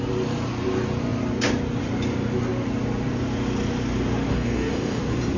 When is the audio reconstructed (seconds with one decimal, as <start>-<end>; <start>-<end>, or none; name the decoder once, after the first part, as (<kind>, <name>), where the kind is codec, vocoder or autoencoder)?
4.3-5.0 (codec, DAC)